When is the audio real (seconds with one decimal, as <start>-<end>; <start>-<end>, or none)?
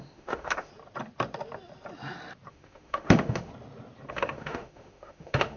0.7-2.5; 3.5-4.1